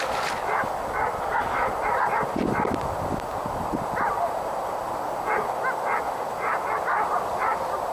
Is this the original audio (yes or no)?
yes